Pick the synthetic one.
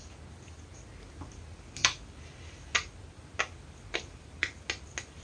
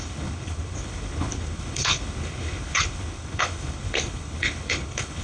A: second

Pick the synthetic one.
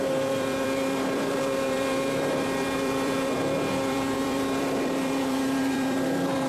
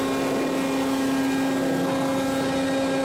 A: first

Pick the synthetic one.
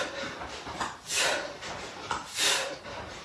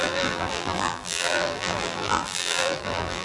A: second